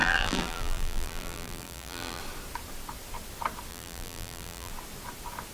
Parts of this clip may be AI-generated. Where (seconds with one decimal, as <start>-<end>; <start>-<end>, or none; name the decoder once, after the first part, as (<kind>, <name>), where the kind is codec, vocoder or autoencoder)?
0.0-2.2 (vocoder, BigVGAN v2); 3.7-4.7